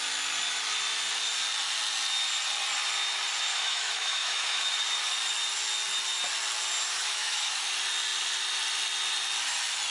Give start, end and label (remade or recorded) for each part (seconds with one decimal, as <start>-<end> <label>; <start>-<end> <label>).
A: 0.0-3.5 recorded; 3.5-4.6 remade; 4.6-6.9 recorded; 6.9-7.6 remade; 7.6-9.9 recorded